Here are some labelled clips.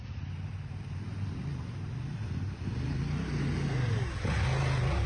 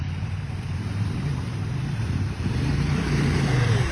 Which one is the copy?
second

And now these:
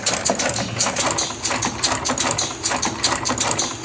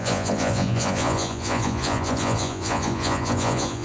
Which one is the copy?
second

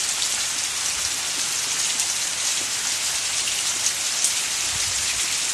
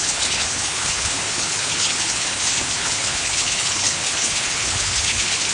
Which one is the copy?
second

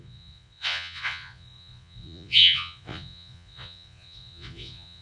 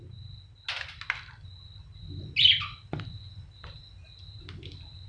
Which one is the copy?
first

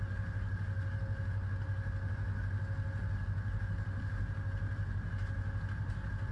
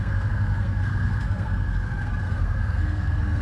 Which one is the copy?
second